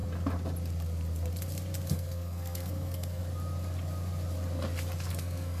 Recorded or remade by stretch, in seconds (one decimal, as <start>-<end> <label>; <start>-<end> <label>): 0.0-1.9 recorded; 1.9-3.2 remade; 3.2-5.1 recorded; 5.1-5.6 remade